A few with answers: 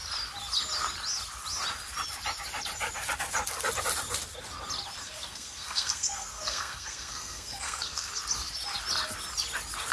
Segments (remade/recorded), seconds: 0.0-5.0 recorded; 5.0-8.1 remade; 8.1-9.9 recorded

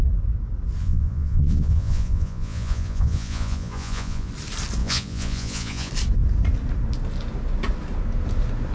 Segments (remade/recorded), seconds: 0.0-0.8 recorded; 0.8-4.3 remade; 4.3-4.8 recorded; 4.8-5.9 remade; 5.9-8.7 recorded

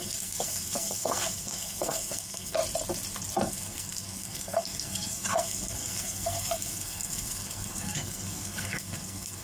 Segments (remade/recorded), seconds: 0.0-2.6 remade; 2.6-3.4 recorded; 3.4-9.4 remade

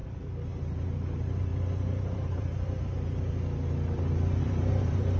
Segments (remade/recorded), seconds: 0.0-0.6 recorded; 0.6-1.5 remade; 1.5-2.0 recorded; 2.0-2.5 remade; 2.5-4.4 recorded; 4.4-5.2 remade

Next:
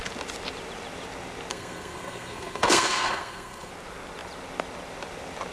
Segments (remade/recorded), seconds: 0.0-1.5 recorded; 1.5-3.7 remade; 3.7-5.5 recorded

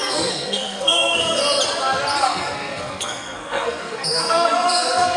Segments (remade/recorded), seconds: 0.0-1.4 remade; 1.4-2.2 recorded; 2.2-5.2 remade